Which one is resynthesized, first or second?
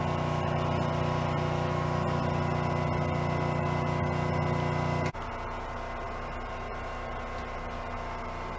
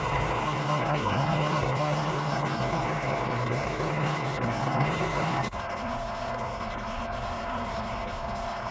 second